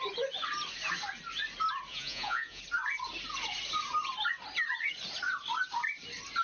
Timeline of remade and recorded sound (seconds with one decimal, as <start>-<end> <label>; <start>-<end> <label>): 0.0-1.9 recorded; 1.9-2.6 remade; 2.6-6.4 recorded

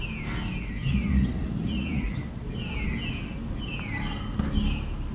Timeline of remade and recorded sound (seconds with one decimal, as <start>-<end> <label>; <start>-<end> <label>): 0.0-0.9 recorded; 0.9-2.2 remade; 2.2-5.1 recorded

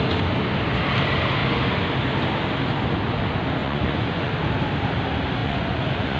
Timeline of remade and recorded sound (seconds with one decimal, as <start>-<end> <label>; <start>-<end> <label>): 0.0-3.6 recorded; 3.6-4.3 remade; 4.3-5.4 recorded; 5.4-6.2 remade

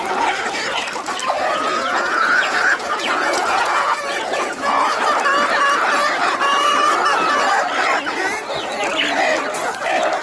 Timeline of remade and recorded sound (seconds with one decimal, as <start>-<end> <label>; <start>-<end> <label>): 0.0-1.5 recorded; 1.5-5.1 remade; 5.1-6.2 recorded; 6.2-6.7 remade; 6.7-10.2 recorded

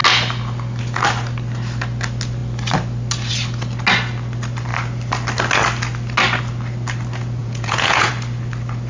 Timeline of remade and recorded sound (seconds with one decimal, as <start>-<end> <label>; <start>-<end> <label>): 0.0-7.4 recorded; 7.4-8.1 remade; 8.1-8.9 recorded